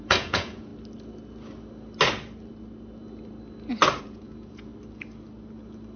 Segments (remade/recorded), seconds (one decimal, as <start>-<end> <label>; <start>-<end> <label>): 0.0-0.7 remade; 0.7-4.0 recorded; 4.0-4.7 remade; 4.7-6.0 recorded